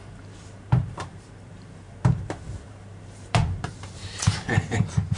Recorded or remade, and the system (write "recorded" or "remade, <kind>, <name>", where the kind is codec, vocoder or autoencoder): remade, vocoder, BigVGAN v2